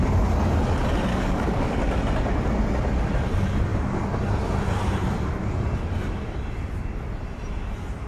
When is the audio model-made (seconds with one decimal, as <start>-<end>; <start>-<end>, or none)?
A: 1.1-2.0